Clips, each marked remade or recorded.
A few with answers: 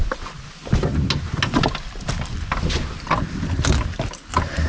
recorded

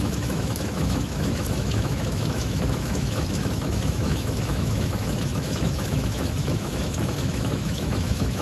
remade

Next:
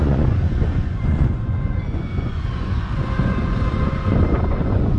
remade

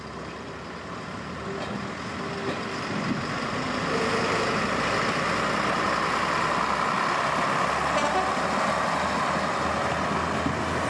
recorded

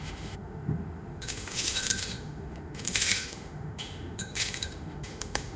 remade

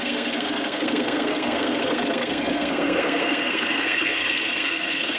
remade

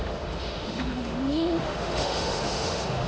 remade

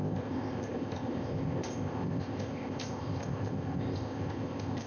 remade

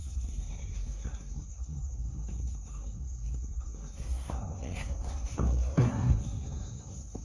remade